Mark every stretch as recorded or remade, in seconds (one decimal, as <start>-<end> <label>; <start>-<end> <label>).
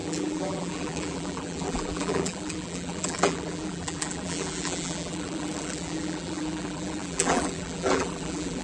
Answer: 0.0-8.6 remade